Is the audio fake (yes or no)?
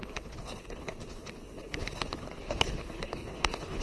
yes